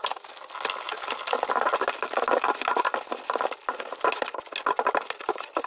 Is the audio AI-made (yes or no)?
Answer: no